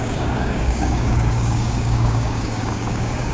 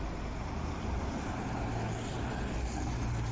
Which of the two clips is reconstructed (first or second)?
first